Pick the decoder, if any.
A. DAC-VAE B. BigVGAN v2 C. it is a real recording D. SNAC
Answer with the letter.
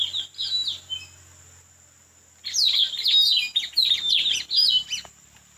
C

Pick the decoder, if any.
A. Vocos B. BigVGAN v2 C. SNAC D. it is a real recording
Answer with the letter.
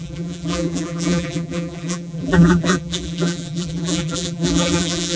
B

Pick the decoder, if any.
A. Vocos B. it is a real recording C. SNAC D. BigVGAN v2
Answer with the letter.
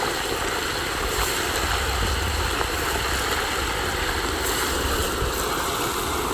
B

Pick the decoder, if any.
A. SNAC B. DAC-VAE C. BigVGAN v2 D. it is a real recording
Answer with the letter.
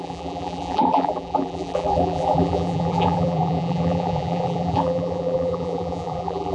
C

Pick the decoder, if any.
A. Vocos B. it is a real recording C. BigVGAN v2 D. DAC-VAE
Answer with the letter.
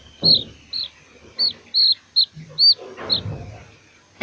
B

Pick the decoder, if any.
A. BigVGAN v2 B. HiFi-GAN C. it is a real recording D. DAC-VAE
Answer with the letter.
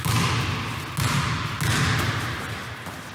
C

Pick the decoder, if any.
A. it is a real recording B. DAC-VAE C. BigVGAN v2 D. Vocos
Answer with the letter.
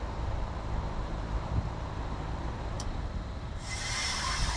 C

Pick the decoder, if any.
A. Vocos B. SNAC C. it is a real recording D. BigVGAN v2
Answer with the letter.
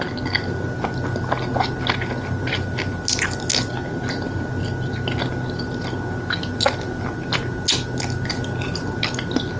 C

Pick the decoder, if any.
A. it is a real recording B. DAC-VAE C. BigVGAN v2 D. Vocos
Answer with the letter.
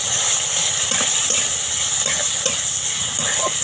A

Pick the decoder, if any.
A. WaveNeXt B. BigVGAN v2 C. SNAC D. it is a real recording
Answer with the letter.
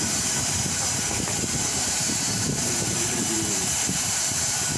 B